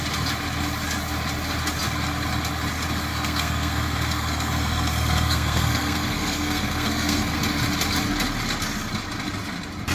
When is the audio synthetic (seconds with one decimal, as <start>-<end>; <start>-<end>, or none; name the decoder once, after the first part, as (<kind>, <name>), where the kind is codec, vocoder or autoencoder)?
3.1-7.4 (codec, SNAC)